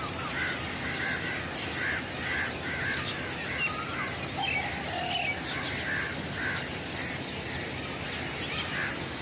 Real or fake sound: real